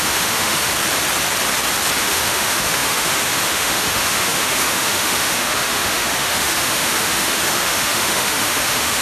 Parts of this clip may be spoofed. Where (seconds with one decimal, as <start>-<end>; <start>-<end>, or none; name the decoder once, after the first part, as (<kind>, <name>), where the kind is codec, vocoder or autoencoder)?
0.0-0.7 (autoencoder, DAC-VAE); 2.0-9.0